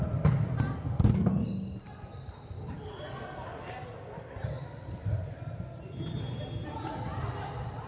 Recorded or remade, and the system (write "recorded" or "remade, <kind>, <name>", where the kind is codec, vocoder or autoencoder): recorded